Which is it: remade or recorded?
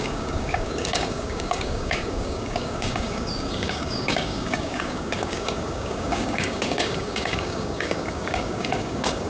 remade